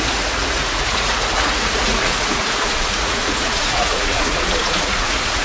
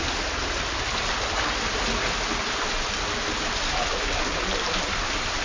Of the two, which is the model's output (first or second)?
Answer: first